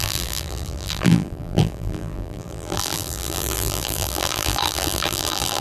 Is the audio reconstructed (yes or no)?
yes